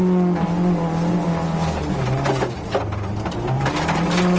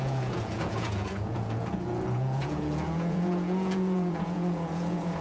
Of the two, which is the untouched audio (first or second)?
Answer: first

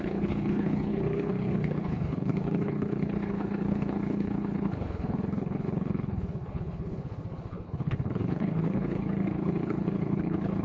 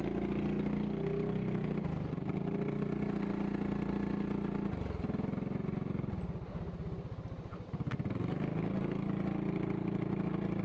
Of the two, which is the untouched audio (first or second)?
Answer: second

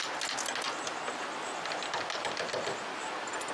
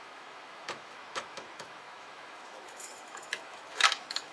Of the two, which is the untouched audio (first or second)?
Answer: first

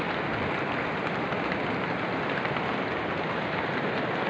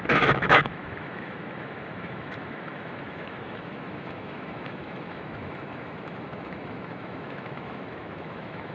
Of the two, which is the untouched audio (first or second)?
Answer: first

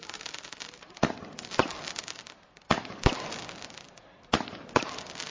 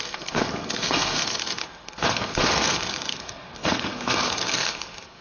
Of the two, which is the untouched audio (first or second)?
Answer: first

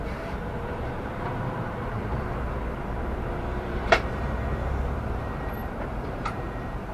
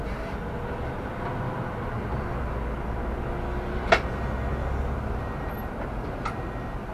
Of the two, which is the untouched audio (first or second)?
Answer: second